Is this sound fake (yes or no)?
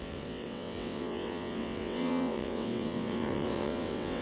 yes